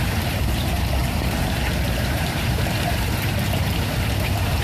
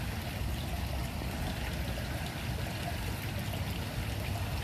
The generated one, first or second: first